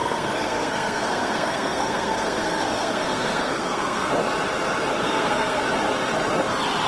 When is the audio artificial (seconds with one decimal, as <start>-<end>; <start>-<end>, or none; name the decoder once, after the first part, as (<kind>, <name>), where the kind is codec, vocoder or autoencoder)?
0.0-4.1 (codec, SNAC); 4.9-5.6